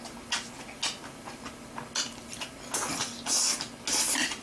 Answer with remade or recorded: recorded